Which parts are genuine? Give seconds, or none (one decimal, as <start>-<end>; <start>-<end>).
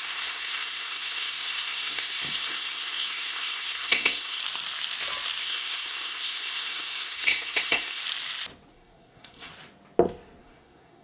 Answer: 4.4-5.4; 8.0-8.7; 9.5-10.4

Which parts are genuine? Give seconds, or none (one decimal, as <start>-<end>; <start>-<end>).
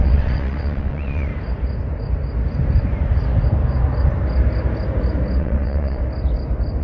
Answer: 1.3-5.4; 6.0-6.8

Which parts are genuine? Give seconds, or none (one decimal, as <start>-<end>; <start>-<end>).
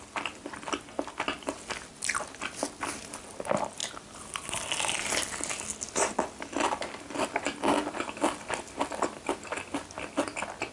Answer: 0.0-10.7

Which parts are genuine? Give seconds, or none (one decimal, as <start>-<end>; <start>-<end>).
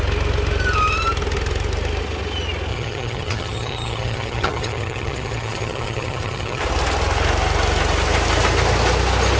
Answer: 0.0-2.7; 6.6-9.4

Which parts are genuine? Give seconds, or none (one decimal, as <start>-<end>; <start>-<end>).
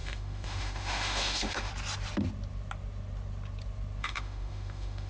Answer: 1.7-4.0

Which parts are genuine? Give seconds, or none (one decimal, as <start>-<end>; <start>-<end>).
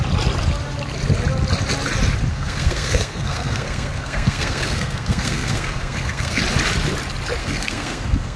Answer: 0.0-2.3; 6.4-7.4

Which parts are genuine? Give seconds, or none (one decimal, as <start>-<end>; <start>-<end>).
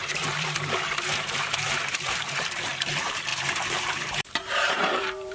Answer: none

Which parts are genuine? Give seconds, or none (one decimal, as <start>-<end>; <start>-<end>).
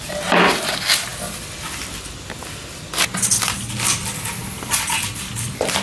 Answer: 0.0-5.8